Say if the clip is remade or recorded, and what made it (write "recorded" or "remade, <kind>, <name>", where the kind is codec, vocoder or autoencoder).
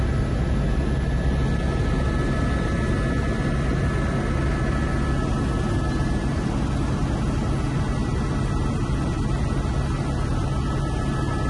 recorded